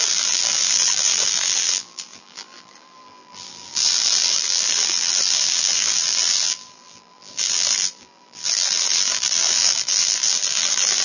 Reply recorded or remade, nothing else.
remade